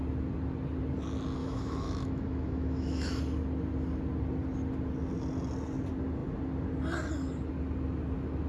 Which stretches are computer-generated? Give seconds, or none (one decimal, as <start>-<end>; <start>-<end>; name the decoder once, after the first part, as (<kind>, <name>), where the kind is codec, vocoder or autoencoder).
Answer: 1.4-3.2 (autoencoder, DAC-VAE)